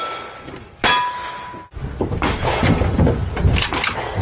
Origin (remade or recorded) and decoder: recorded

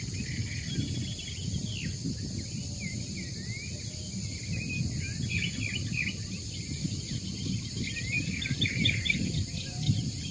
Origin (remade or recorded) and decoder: recorded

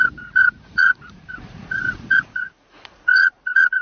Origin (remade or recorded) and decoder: remade, vocoder, Vocos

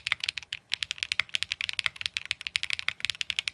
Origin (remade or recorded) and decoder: recorded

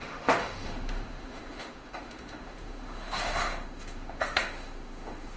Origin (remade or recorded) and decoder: remade, autoencoder, DAC-VAE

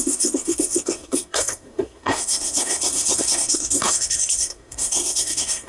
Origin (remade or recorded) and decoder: remade, codec, SNAC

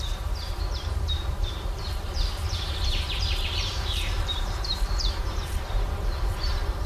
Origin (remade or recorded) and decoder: remade, vocoder, BigVGAN v2